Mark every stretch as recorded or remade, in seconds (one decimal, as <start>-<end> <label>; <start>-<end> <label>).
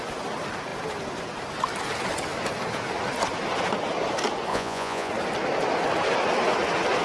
0.0-4.5 recorded; 4.5-5.1 remade; 5.1-7.0 recorded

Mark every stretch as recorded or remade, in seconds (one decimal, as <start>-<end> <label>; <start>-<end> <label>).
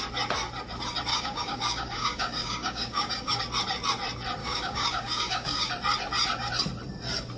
0.0-1.1 recorded; 1.1-3.4 remade; 3.4-4.4 recorded; 4.4-5.7 remade; 5.7-7.4 recorded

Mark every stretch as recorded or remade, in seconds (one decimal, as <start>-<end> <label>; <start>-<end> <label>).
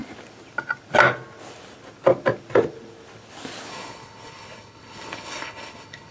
0.0-3.7 recorded; 3.7-6.1 remade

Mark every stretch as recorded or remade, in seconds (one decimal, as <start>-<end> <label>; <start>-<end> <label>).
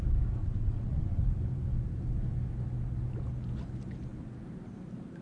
0.0-0.4 recorded; 0.4-1.2 remade; 1.2-5.2 recorded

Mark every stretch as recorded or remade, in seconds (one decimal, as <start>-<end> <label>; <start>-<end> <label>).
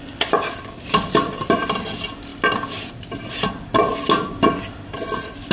0.0-2.3 remade; 2.3-2.9 recorded; 2.9-3.9 remade; 3.9-5.5 recorded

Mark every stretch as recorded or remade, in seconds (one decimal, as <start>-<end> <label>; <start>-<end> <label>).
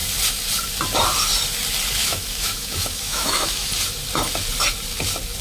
0.0-2.0 recorded; 2.0-3.7 remade; 3.7-5.4 recorded